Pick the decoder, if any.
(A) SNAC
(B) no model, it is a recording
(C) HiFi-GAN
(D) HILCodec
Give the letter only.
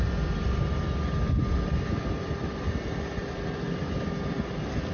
B